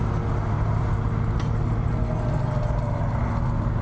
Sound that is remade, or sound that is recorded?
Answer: recorded